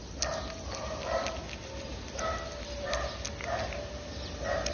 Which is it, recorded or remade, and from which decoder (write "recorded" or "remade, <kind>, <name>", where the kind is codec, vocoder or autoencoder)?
recorded